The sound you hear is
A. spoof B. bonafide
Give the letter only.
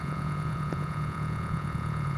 A